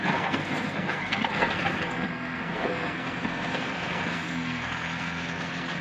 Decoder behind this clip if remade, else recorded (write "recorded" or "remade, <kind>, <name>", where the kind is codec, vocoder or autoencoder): remade, codec, SNAC